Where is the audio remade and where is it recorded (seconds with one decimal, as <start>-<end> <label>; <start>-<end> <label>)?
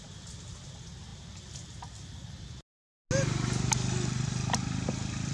0.0-5.3 recorded